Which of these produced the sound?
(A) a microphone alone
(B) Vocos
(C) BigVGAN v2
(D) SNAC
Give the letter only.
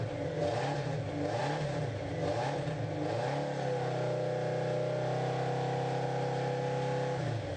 A